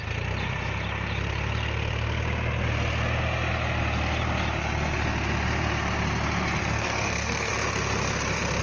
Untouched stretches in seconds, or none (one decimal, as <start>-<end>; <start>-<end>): 0.0-6.6; 7.5-8.6